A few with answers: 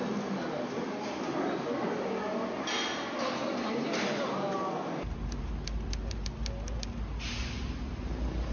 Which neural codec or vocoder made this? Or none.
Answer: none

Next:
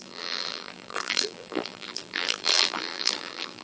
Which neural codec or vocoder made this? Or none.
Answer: vocoder, BigVGAN v2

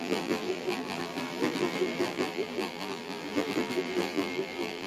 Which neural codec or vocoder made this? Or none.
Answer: vocoder, BigVGAN v2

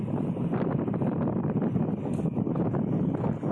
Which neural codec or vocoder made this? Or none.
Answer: vocoder, BigVGAN v2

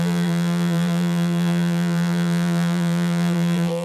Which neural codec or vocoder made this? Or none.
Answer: vocoder, BigVGAN v2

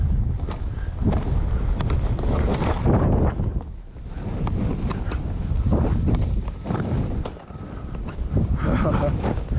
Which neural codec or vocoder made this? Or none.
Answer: none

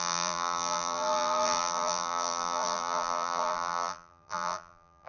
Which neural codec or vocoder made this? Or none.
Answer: vocoder, BigVGAN v2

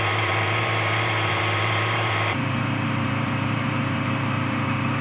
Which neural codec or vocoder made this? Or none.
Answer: vocoder, BigVGAN v2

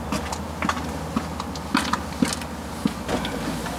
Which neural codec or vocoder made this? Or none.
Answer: none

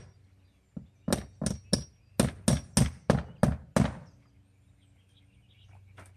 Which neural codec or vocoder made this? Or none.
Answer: none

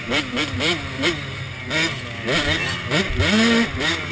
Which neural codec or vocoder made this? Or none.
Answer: none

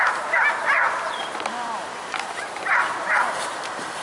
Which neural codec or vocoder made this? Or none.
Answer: vocoder, BigVGAN v2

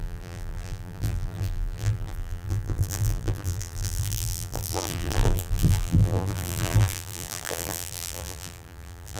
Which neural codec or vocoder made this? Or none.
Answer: vocoder, BigVGAN v2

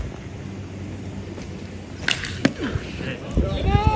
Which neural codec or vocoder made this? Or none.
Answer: none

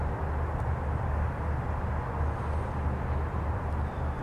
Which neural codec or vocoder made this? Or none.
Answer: none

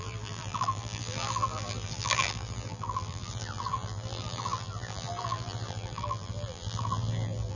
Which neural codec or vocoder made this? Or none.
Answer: vocoder, BigVGAN v2